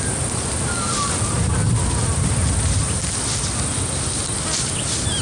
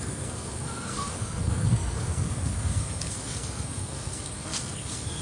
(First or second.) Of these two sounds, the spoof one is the second